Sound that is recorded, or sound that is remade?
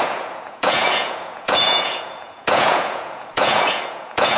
remade